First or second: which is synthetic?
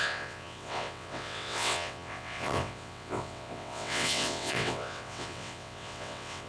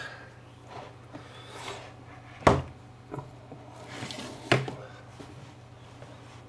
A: first